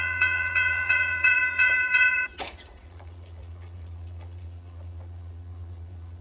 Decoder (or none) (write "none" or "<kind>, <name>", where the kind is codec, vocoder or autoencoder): vocoder, Vocos